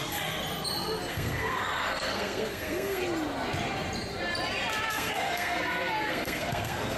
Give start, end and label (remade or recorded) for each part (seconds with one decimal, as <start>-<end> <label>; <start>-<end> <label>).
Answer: 0.0-0.4 remade; 0.4-1.1 recorded; 1.1-3.0 remade; 3.0-4.9 recorded; 4.9-7.0 remade